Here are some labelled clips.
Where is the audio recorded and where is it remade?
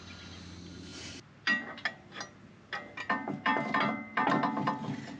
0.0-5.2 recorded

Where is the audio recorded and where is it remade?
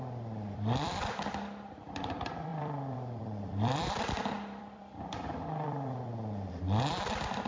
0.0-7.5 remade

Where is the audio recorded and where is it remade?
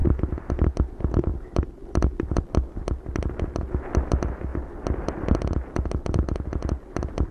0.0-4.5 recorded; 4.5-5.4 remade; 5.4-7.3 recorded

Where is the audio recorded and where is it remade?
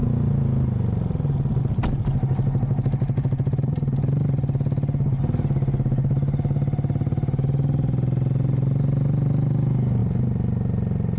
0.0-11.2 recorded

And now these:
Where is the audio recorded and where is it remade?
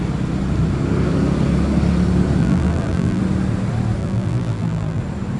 0.0-2.4 recorded; 2.4-3.2 remade; 3.2-4.0 recorded; 4.0-5.0 remade; 5.0-5.4 recorded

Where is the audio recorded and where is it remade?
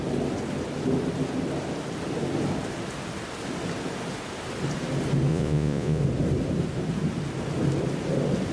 0.0-5.3 recorded; 5.3-6.0 remade; 6.0-8.5 recorded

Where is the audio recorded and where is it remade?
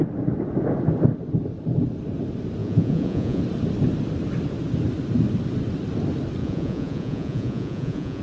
0.0-2.6 recorded; 2.6-3.4 remade; 3.4-6.4 recorded; 6.4-8.2 remade